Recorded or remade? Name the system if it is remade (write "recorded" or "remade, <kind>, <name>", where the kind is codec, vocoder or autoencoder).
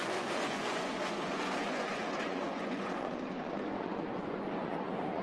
remade, vocoder, Vocos